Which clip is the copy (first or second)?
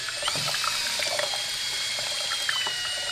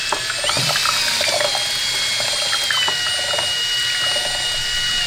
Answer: first